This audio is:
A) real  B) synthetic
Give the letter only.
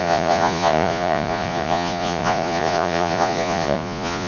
B